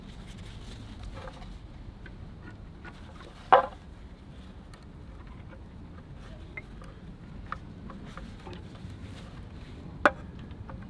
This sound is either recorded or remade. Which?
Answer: recorded